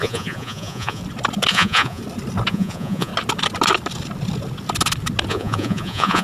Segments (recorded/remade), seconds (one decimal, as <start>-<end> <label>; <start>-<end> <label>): 0.0-1.0 remade; 1.0-1.5 recorded; 1.5-2.0 remade; 2.0-2.5 recorded; 2.5-3.1 remade; 3.1-5.3 recorded; 5.3-6.2 remade